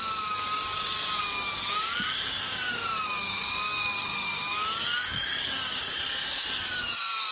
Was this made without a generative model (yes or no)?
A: no